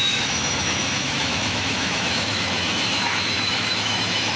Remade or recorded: remade